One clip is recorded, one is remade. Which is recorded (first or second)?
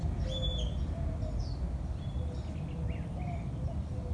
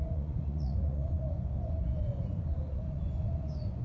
first